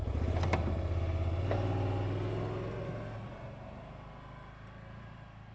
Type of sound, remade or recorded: recorded